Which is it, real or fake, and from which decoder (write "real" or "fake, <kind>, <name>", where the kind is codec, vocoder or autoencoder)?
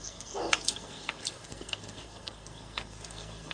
fake, codec, SNAC